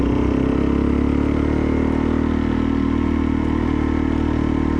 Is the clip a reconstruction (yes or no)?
no